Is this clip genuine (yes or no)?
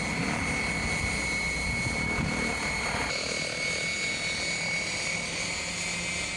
yes